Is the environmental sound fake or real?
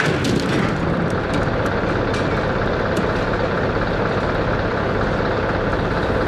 real